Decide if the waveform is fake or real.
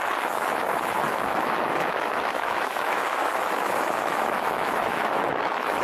fake